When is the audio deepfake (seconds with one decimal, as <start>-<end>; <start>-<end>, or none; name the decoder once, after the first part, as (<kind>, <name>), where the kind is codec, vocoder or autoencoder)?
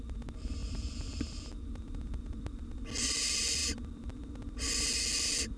none